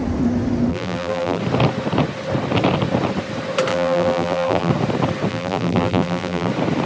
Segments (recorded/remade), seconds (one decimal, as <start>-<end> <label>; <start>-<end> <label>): 0.0-0.7 recorded; 0.7-1.4 remade; 1.4-3.7 recorded; 3.7-4.7 remade; 4.7-5.3 recorded; 5.3-6.5 remade; 6.5-6.9 recorded